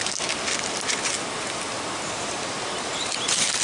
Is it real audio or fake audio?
real